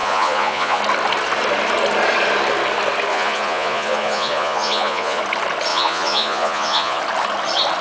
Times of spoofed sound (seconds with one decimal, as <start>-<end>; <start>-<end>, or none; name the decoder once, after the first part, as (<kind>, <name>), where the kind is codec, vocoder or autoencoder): 0.0-0.8 (vocoder, Vocos); 3.1-5.2; 5.7-7.0